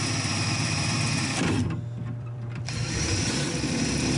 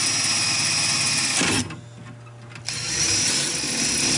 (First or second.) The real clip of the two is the second